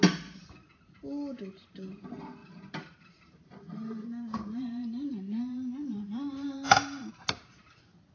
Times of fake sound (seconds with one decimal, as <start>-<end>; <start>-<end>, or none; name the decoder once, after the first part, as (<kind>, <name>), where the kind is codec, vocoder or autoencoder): 2.4-7.1 (vocoder, BigVGAN v2)

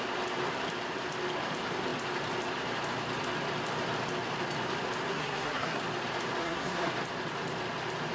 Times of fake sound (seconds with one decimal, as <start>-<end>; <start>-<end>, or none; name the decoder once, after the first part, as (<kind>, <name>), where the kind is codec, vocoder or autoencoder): 5.1-5.8 (codec, SNAC); 6.4-6.9